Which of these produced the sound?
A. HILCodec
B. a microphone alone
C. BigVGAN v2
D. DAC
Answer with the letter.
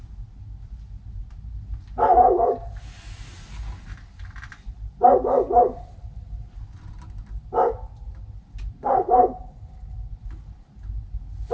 B